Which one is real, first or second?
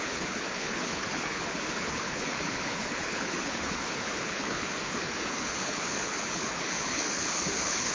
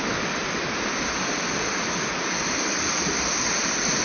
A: second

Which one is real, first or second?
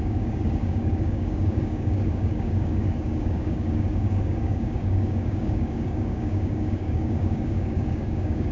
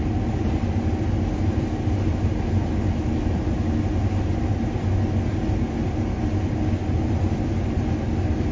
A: second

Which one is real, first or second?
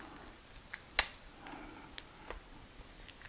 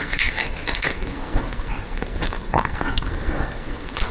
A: first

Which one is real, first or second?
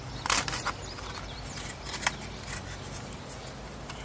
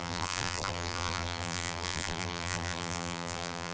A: first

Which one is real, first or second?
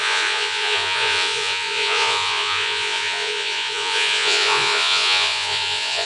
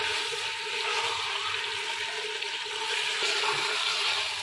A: second